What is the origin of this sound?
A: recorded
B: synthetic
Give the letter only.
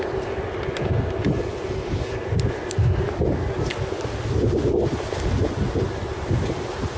A